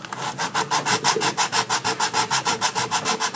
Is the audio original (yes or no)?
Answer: yes